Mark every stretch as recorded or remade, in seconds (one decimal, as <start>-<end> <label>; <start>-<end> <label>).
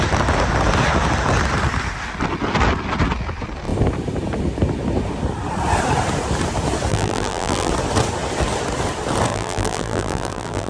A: 0.0-6.9 recorded; 6.9-7.7 remade; 7.7-9.3 recorded; 9.3-10.7 remade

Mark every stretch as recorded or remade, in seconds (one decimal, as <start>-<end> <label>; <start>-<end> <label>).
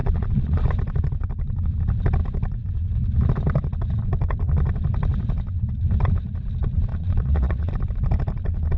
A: 0.0-0.7 remade; 0.7-6.9 recorded; 6.9-7.7 remade; 7.7-8.8 recorded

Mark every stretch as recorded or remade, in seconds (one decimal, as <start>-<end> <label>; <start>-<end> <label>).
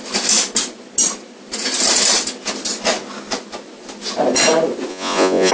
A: 0.0-4.9 recorded; 4.9-5.5 remade